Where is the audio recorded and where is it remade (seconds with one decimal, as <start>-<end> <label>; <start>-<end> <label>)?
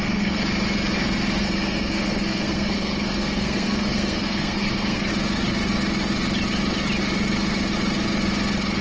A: 0.0-0.4 remade; 0.4-1.4 recorded; 1.4-5.1 remade; 5.1-8.8 recorded